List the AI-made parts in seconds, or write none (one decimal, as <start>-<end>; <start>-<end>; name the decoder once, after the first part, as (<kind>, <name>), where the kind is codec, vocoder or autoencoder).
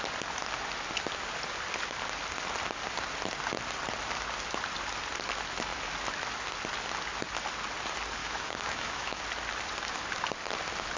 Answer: 8.2-9.2 (autoencoder, DAC-VAE)